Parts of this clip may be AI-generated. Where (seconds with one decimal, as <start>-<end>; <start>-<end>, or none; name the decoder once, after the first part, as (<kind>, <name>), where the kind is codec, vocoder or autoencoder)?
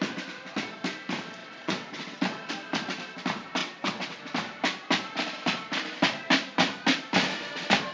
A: 1.4-2.5 (vocoder, WaveNeXt); 3.6-4.2